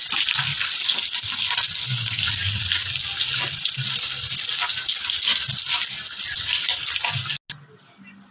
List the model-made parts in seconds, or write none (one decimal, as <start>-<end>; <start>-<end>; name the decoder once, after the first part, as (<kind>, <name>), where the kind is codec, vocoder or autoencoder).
none